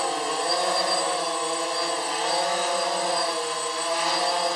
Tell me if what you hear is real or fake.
real